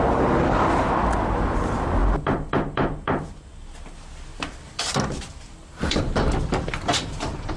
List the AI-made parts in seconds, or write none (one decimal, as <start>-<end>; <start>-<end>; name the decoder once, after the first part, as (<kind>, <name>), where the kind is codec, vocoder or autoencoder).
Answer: 2.0-3.3 (vocoder, BigVGAN v2); 4.3-7.6